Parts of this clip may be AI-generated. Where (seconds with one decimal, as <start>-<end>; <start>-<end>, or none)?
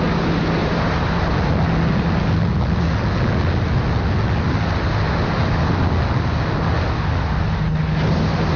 0.6-1.1